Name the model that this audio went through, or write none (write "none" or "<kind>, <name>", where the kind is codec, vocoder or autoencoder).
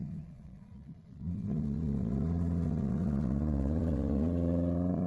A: vocoder, Vocos